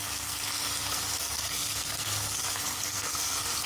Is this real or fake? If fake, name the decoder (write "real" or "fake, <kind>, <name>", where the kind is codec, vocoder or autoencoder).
fake, codec, SNAC